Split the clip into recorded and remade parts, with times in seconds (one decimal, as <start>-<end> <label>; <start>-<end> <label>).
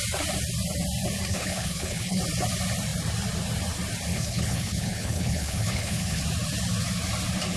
0.0-1.3 recorded; 1.3-2.2 remade; 2.2-4.1 recorded; 4.1-6.2 remade; 6.2-7.6 recorded